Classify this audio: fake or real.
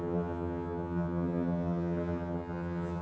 fake